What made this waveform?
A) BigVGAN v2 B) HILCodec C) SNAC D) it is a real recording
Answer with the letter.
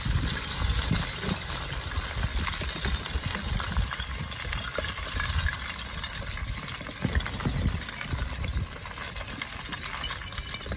D